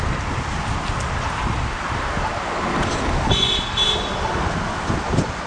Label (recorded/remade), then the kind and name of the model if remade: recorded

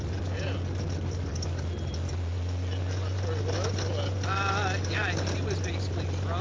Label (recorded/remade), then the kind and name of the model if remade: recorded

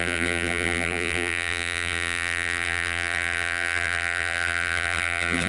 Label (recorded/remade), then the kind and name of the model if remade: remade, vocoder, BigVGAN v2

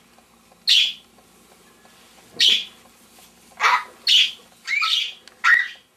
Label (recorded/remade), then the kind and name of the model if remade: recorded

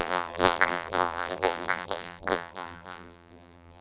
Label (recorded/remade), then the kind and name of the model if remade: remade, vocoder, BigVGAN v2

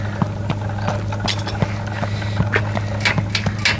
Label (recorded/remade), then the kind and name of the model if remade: recorded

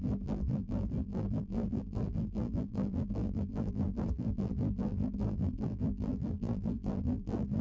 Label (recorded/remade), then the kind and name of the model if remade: remade, vocoder, BigVGAN v2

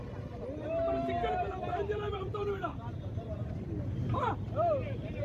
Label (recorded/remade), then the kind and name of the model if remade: remade, vocoder, BigVGAN v2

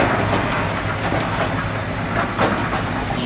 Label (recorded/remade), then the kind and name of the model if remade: recorded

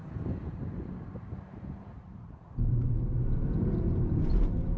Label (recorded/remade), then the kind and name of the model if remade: remade, vocoder, BigVGAN v2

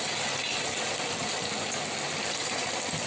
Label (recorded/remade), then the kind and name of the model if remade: recorded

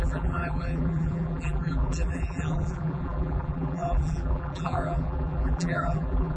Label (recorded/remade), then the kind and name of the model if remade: remade, vocoder, BigVGAN v2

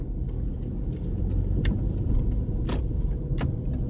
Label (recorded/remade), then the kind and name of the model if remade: remade, vocoder, BigVGAN v2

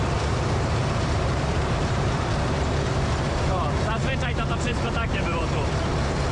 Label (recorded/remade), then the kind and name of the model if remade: remade, vocoder, BigVGAN v2